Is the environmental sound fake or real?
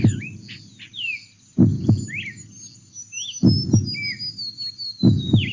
real